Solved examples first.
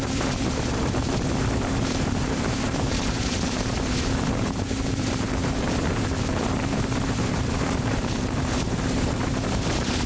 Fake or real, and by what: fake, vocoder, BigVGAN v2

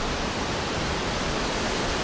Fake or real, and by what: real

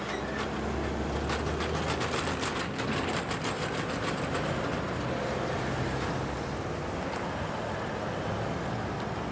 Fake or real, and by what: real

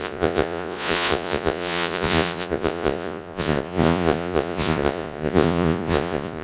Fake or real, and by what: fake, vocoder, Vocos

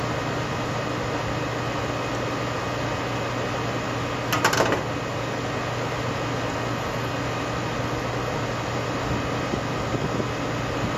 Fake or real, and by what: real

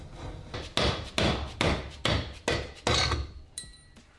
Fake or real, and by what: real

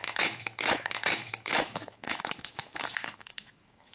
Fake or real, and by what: fake, autoencoder, DAC-VAE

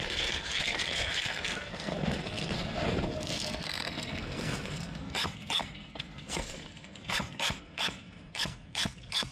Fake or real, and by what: fake, codec, SNAC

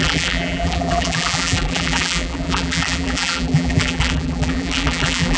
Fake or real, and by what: fake, vocoder, BigVGAN v2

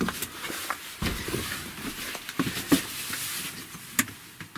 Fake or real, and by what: real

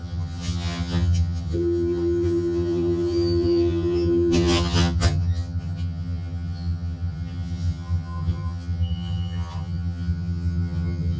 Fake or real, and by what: fake, vocoder, HiFi-GAN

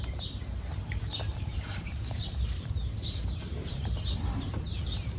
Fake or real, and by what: fake, vocoder, BigVGAN v2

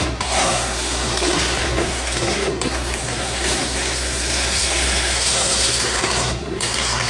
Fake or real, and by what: fake, codec, SNAC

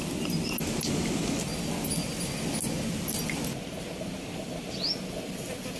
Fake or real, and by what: real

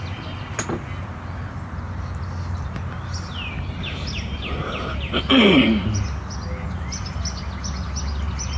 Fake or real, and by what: real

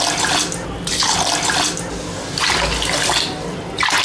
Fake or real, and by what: real